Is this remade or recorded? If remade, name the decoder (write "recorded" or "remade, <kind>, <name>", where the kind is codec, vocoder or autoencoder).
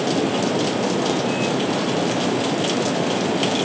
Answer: recorded